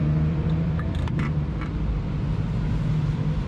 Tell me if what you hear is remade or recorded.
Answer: remade